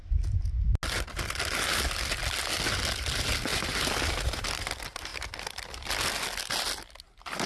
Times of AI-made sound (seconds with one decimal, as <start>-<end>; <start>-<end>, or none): none